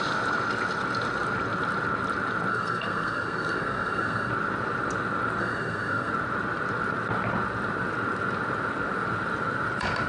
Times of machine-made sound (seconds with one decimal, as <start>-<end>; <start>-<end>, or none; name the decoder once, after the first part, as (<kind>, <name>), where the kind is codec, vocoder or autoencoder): 2.5-4.3 (codec, SNAC); 5.4-6.1